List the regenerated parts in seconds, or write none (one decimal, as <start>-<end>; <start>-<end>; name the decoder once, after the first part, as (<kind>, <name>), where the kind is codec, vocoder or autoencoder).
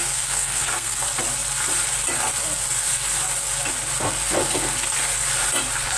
0.0-1.0 (codec, SNAC)